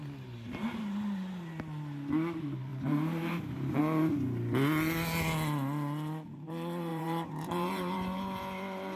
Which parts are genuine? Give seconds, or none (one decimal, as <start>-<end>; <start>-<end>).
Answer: 0.0-2.7; 3.8-6.9; 8.2-9.0